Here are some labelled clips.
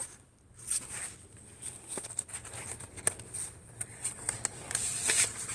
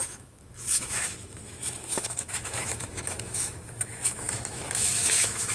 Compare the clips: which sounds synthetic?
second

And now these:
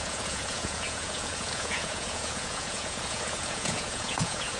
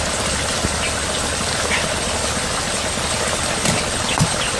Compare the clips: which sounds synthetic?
first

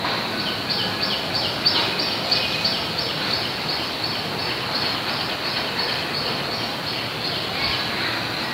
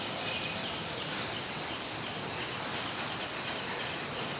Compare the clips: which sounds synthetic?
second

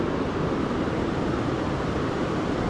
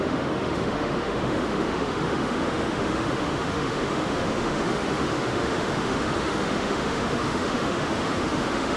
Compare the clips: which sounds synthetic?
second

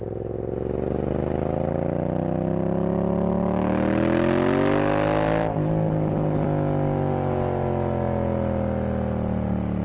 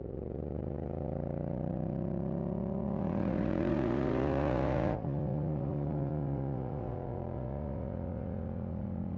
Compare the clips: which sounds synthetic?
second